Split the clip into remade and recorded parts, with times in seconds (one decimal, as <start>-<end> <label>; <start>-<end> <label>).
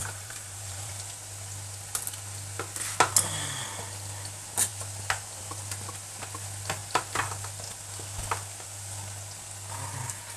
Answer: 0.0-0.9 remade; 0.9-10.4 recorded